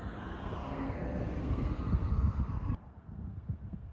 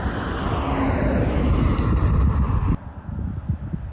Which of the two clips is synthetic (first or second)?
first